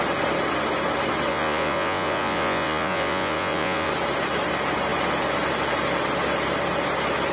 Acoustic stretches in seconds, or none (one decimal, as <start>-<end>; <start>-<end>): 0.0-1.3; 3.9-7.3